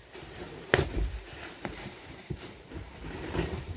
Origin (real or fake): fake